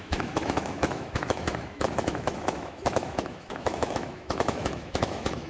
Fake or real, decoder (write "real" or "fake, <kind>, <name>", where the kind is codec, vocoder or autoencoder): fake, autoencoder, DAC-VAE